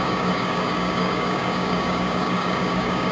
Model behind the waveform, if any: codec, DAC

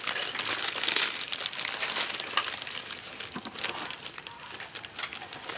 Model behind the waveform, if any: none